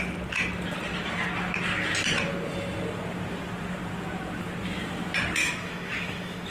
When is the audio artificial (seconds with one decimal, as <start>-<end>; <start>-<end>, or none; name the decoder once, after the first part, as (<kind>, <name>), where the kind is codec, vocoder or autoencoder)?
5.4-6.5 (autoencoder, DAC-VAE)